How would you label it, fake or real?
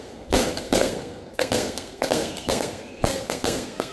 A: fake